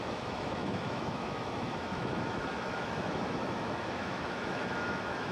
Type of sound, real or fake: fake